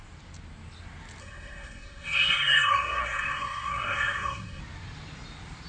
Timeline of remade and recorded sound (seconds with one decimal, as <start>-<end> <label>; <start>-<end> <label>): 0.0-1.2 recorded; 1.2-4.6 remade; 4.6-5.7 recorded